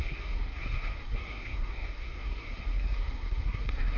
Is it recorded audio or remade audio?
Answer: remade